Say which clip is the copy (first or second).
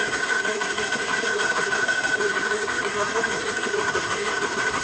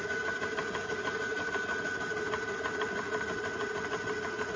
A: first